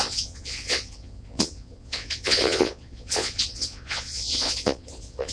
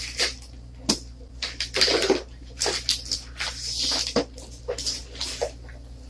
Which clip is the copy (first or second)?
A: first